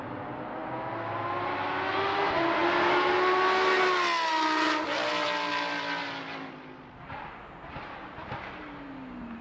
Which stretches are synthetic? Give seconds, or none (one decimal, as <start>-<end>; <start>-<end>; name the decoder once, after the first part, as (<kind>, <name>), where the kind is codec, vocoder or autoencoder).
none